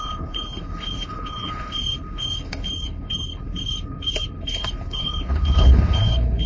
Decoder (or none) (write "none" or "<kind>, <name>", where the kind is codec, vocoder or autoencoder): codec, HILCodec